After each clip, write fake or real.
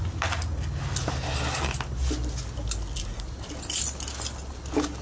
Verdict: real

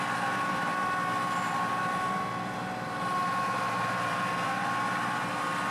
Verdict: real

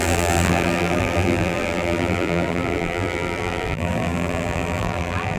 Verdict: fake